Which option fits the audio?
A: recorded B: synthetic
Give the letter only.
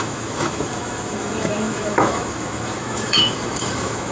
B